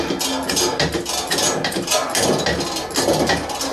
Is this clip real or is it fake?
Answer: real